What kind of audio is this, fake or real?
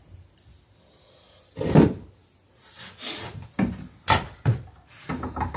real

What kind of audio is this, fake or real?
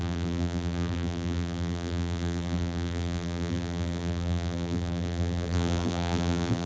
fake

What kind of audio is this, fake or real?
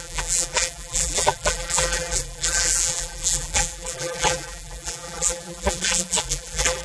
fake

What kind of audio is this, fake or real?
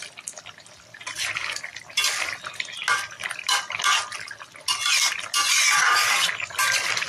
real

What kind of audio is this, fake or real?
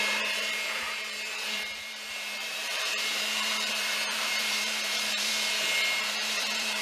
fake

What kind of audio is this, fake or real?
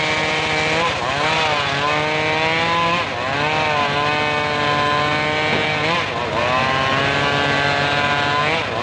real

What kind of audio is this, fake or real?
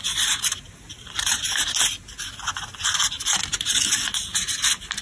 real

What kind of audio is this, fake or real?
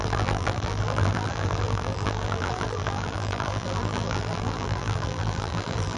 fake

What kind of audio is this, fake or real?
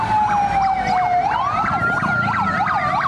real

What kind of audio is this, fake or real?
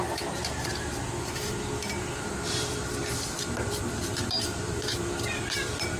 fake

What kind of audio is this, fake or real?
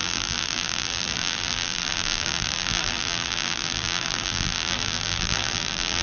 fake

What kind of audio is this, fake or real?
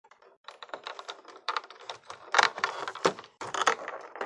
fake